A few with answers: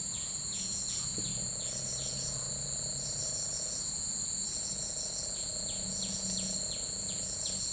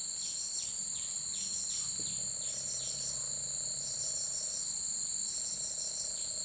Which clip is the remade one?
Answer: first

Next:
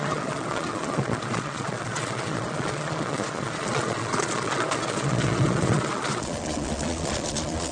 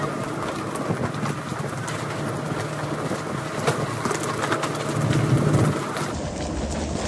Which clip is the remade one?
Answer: first